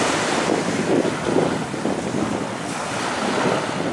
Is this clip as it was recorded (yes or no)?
yes